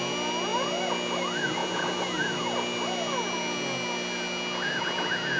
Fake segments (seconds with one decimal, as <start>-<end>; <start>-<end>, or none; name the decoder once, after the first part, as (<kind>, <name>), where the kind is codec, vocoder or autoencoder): none

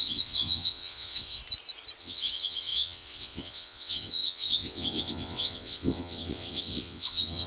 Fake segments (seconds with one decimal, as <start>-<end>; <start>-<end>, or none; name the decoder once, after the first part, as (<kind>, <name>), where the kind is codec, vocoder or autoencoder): 0.0-1.4 (vocoder, WaveNeXt); 2.0-7.5